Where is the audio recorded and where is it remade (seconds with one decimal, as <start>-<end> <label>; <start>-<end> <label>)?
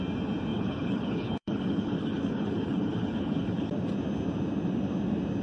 0.0-0.5 recorded; 0.5-3.7 remade; 3.7-5.4 recorded